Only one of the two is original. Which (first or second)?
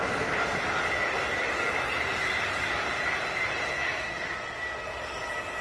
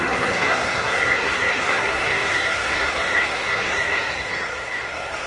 first